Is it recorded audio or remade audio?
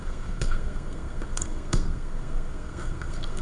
remade